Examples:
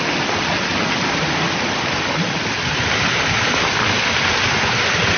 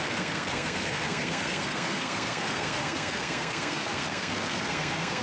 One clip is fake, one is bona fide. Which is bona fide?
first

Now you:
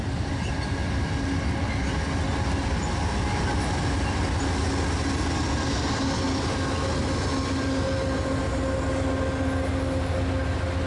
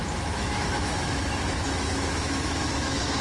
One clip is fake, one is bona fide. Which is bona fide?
first